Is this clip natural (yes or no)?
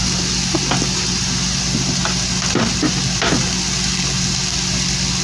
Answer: yes